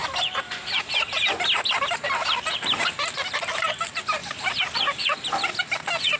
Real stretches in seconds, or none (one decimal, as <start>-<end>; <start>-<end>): 0.0-6.2